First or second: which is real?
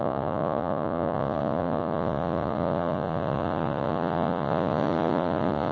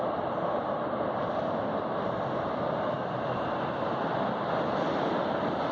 second